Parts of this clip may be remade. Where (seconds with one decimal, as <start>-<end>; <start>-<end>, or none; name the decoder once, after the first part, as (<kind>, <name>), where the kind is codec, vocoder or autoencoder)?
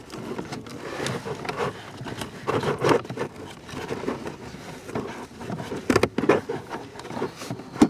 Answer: none